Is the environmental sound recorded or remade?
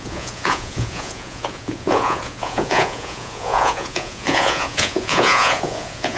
remade